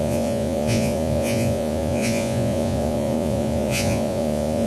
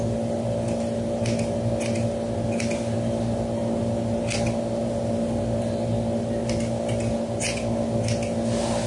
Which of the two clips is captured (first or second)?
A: second